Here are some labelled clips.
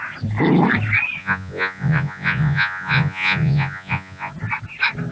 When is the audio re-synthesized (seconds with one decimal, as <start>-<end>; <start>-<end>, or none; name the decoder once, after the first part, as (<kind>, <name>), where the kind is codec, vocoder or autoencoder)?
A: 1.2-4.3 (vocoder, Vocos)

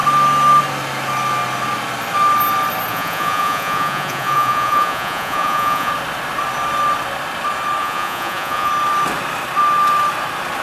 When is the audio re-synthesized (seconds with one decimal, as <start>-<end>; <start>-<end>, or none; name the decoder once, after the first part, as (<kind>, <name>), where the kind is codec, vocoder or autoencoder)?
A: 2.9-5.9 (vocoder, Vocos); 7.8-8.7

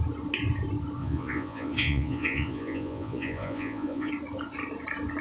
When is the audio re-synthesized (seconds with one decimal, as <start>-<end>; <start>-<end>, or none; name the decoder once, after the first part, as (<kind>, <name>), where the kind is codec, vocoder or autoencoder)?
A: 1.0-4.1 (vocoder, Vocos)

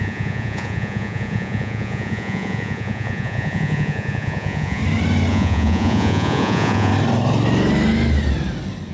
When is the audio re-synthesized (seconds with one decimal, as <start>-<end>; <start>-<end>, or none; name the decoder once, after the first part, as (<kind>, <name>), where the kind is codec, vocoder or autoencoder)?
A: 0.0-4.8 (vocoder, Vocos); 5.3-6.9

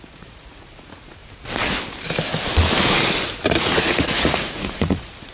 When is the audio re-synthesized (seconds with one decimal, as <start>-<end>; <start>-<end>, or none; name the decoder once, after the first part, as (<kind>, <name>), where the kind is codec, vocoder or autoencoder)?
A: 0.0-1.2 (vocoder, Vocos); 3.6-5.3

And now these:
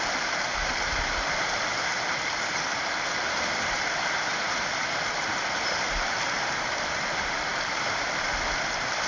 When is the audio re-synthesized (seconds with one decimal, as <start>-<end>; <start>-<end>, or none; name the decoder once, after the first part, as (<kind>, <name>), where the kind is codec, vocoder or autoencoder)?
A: none

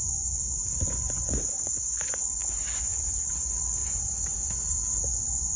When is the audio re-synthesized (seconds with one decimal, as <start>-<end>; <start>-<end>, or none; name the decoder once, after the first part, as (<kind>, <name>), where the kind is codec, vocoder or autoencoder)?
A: 0.0-5.6 (vocoder, Vocos)